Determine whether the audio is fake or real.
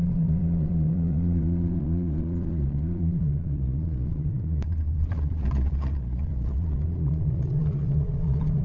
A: fake